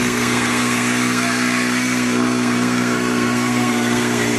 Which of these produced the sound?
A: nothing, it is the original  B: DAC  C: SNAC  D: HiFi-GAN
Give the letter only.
C